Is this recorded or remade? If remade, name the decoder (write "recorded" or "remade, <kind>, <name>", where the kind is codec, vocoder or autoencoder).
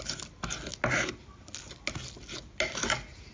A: recorded